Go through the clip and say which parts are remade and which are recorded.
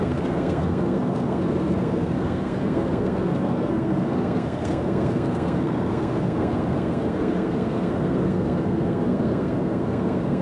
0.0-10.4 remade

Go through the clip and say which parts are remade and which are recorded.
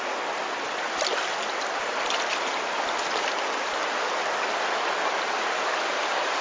0.0-6.4 recorded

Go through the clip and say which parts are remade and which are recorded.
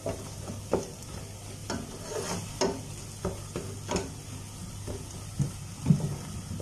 0.0-6.6 recorded